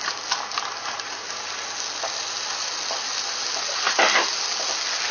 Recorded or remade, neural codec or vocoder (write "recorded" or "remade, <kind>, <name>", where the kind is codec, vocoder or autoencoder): recorded